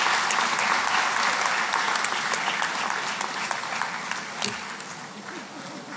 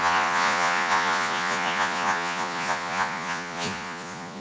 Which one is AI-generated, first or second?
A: second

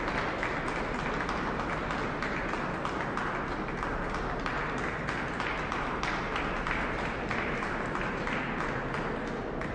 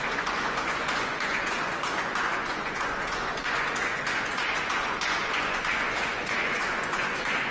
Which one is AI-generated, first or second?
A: second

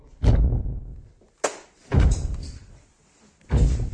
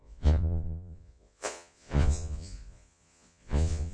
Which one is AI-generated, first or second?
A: second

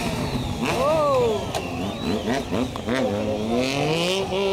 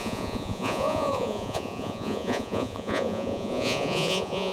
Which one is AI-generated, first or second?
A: second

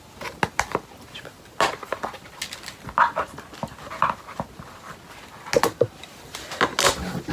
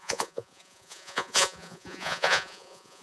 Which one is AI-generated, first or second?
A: second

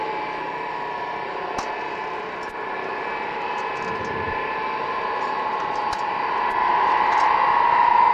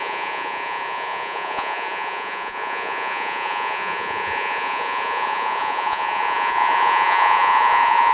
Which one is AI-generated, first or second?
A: second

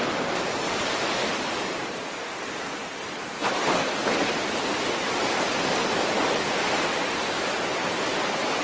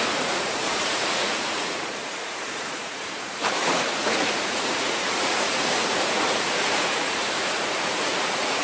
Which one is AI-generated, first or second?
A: second